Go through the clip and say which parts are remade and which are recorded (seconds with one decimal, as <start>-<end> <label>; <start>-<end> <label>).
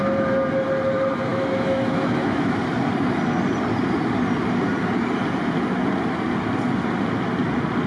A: 0.0-1.3 recorded; 1.3-2.6 remade; 2.6-7.9 recorded